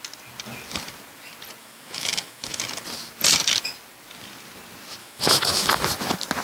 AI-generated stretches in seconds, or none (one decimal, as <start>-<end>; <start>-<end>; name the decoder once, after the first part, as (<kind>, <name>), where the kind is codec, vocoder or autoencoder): 1.6-2.6 (autoencoder, DAC-VAE); 5.0-5.8